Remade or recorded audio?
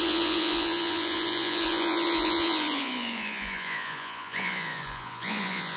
remade